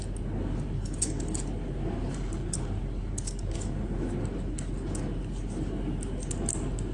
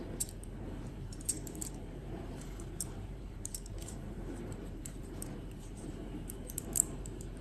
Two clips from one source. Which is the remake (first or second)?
second